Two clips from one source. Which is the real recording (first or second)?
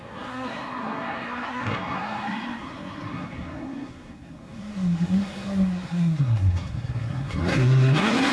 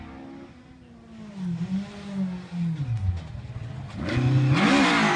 second